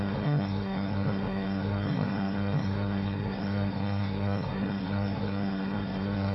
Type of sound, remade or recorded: remade